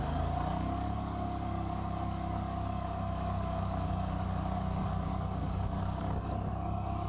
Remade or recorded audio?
remade